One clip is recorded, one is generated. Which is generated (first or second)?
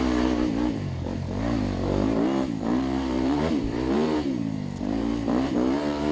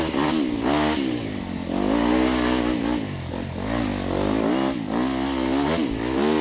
first